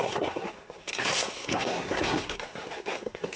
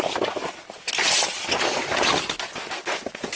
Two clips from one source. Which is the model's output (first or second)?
first